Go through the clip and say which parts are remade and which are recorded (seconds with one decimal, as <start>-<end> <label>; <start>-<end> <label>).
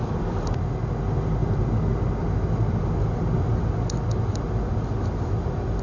0.0-5.8 recorded